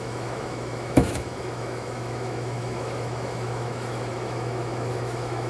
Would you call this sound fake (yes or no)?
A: yes